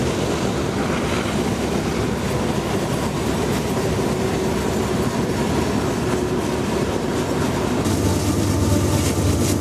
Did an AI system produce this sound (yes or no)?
no